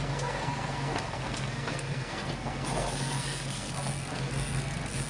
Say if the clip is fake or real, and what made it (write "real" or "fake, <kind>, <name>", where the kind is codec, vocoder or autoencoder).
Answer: fake, codec, SNAC